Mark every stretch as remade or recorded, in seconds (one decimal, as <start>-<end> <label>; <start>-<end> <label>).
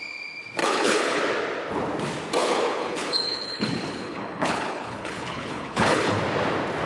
0.0-0.6 recorded; 0.6-1.2 remade; 1.2-2.4 recorded; 2.4-6.2 remade; 6.2-6.9 recorded